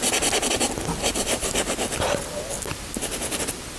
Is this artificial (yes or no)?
no